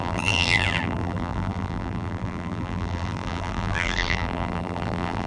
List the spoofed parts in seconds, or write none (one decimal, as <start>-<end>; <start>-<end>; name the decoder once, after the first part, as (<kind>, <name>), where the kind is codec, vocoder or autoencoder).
0.0-5.3 (vocoder, BigVGAN v2)